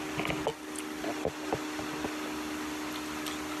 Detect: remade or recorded recorded